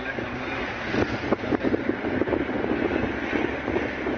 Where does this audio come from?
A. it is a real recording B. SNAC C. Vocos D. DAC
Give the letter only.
A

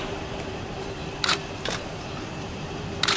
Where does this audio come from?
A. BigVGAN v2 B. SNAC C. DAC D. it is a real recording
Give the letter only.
A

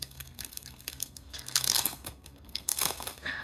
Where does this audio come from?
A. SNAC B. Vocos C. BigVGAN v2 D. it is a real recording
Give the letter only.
A